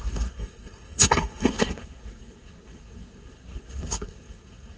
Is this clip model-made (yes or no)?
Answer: yes